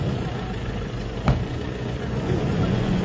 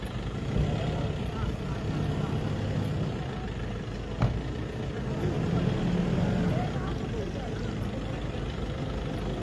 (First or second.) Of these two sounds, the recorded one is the second